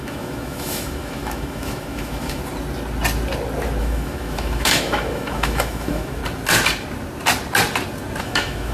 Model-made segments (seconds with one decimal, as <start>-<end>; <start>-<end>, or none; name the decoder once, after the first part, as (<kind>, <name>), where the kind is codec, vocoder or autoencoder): 0.0-2.4 (autoencoder, DAC-VAE); 3.8-6.2; 8.2-8.7